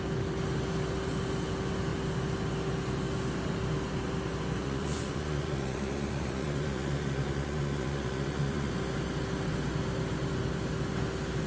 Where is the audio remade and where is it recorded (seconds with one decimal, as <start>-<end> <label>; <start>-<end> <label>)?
0.0-4.6 recorded; 4.6-8.7 remade; 8.7-11.5 recorded